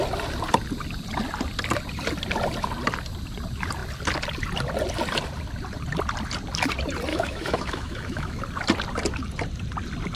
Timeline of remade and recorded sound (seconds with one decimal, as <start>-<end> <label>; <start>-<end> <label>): 0.0-7.1 recorded; 7.1-8.4 remade; 8.4-10.2 recorded